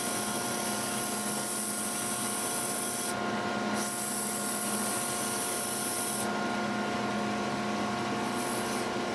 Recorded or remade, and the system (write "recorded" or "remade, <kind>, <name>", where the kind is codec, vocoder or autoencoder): recorded